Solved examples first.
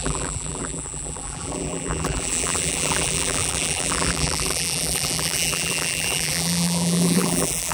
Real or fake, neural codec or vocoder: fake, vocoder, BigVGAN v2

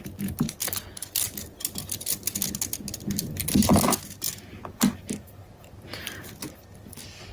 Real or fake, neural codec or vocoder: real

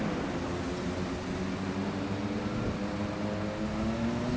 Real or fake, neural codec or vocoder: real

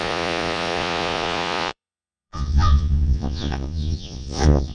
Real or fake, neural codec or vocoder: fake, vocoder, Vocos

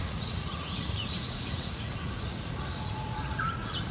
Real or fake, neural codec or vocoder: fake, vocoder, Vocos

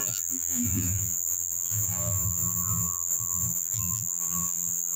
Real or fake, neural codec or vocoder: fake, vocoder, BigVGAN v2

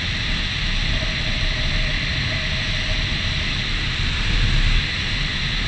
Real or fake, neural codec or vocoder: real